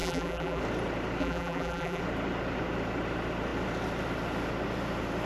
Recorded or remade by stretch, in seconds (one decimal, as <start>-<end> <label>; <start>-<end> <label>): 0.0-0.6 remade; 0.6-1.2 recorded; 1.2-2.0 remade; 2.0-5.3 recorded